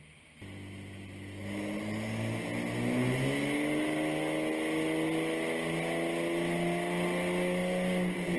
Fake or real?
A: real